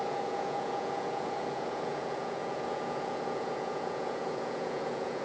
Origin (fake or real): fake